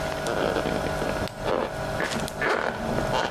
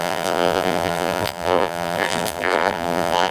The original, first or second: first